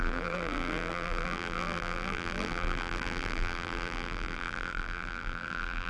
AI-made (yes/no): yes